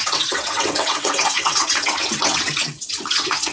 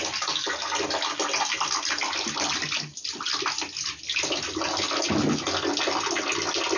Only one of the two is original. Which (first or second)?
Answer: second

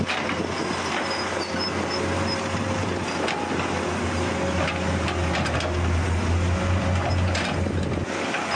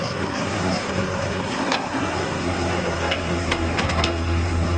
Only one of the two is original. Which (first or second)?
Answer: first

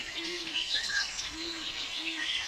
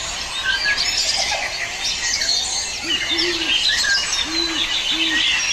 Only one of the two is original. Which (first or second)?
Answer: second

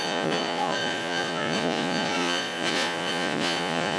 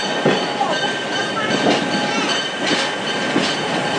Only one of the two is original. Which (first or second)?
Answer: second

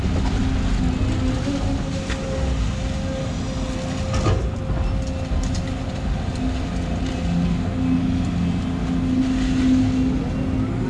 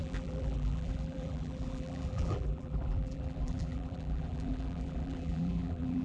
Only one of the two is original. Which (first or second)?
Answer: first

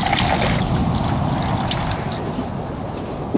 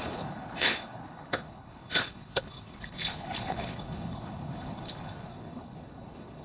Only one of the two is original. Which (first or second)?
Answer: first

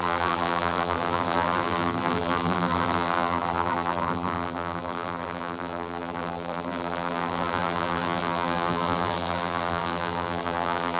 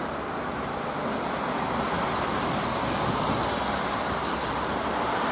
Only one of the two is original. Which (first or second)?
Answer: second